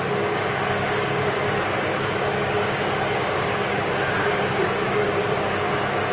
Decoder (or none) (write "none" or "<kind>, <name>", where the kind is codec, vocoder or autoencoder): codec, DAC